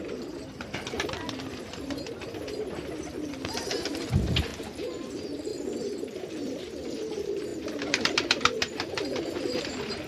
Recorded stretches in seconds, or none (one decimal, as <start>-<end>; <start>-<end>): 4.5-5.1; 5.5-6.3